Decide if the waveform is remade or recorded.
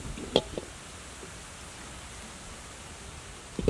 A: recorded